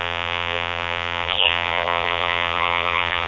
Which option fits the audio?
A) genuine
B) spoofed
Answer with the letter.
B